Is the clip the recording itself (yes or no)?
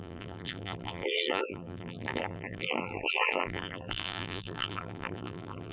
no